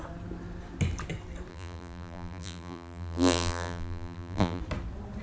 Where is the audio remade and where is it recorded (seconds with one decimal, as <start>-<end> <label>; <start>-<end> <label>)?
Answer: 0.0-1.5 recorded; 1.5-4.6 remade; 4.6-5.2 recorded